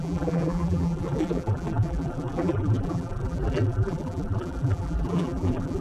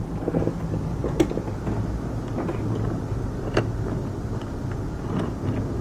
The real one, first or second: second